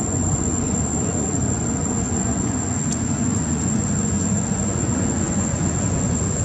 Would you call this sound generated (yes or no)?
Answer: yes